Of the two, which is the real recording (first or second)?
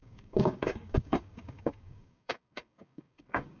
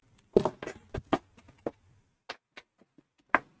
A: second